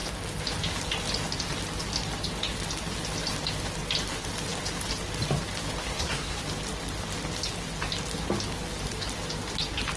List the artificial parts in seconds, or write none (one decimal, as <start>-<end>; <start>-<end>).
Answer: 5.8-6.4